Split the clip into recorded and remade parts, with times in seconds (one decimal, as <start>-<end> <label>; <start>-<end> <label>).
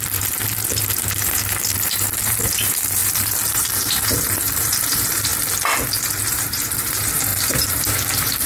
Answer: 0.0-5.3 remade; 5.3-6.3 recorded; 6.3-8.5 remade